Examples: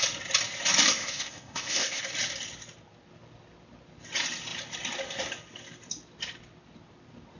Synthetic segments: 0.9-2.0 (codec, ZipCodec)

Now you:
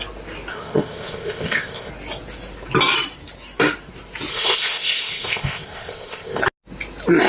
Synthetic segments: 0.5-1.9 (codec, ZipCodec); 4.3-6.4

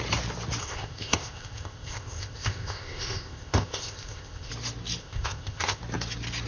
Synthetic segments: 0.6-4.5 (codec, ZipCodec); 5.0-5.8

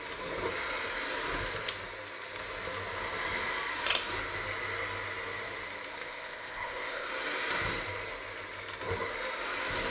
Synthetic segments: 5.9-7.1 (codec, ZipCodec)